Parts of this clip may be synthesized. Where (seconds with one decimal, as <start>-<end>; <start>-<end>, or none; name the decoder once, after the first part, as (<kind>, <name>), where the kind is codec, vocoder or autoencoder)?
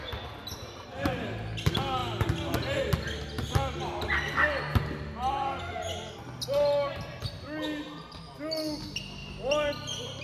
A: none